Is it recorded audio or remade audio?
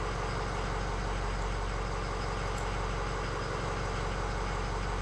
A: recorded